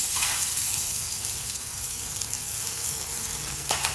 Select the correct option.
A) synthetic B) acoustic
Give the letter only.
A